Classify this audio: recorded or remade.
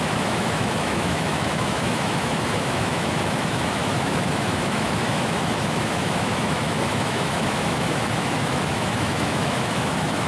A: remade